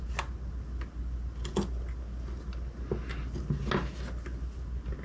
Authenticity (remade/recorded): recorded